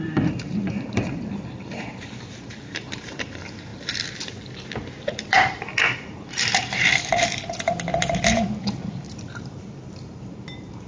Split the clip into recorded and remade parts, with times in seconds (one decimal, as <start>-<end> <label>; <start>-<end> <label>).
0.0-3.7 remade; 3.7-5.1 recorded; 5.1-10.9 remade